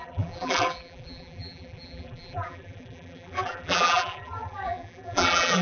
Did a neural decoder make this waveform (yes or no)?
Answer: yes